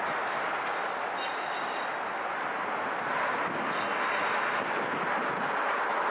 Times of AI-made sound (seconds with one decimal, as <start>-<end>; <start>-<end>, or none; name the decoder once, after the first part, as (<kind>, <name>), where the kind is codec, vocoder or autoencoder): none